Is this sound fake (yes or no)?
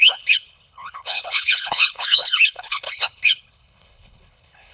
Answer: yes